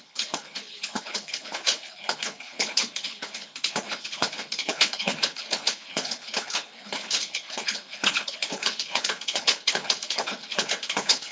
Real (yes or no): no